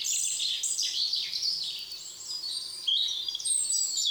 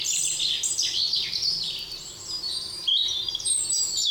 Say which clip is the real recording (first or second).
second